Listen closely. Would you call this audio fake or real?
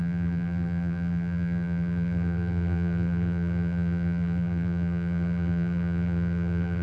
fake